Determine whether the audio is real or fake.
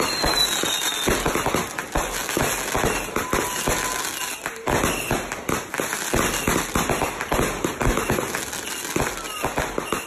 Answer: real